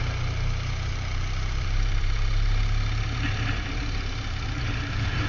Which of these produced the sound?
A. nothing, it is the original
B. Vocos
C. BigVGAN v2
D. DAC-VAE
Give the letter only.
C